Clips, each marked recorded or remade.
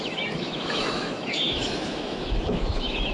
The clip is remade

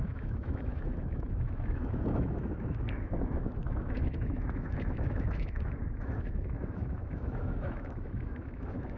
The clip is remade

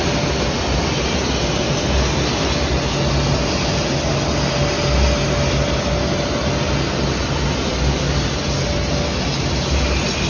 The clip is recorded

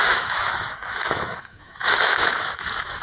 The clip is remade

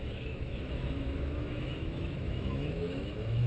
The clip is remade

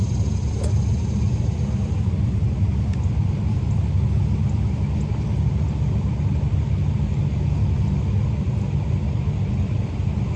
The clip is recorded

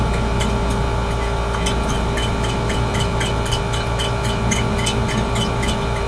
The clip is recorded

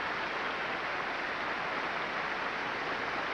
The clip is recorded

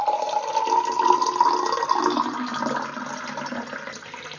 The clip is recorded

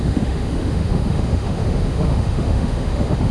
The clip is remade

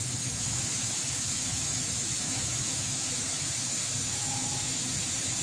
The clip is remade